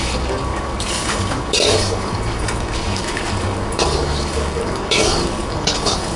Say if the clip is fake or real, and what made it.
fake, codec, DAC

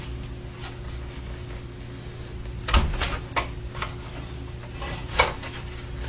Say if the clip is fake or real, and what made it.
real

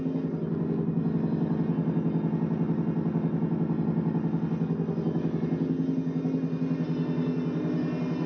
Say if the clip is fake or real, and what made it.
real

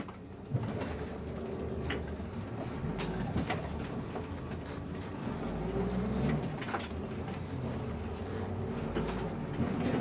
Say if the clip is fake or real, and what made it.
real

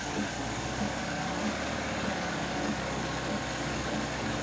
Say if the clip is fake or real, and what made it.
fake, codec, DAC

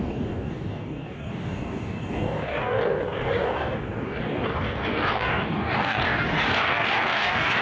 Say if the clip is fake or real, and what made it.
fake, codec, DAC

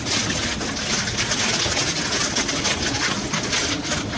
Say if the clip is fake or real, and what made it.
real